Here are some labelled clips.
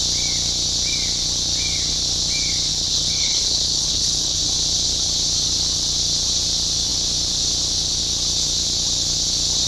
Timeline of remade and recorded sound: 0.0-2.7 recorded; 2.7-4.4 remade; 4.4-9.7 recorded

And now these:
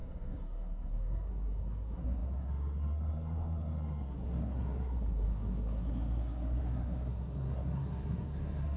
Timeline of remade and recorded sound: 0.0-8.8 remade

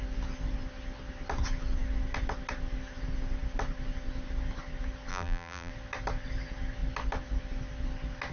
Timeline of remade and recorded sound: 0.0-5.1 recorded; 5.1-5.7 remade; 5.7-8.3 recorded

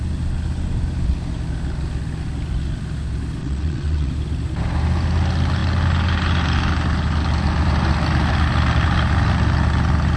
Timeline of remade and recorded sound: 0.0-3.4 recorded; 3.4-4.1 remade; 4.1-10.2 recorded